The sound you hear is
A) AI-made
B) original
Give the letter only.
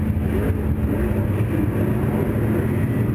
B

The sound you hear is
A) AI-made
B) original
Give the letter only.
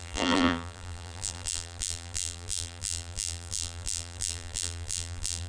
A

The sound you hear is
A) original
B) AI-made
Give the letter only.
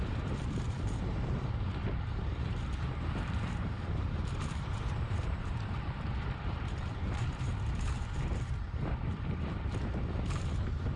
B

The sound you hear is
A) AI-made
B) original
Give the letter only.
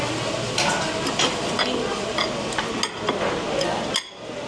B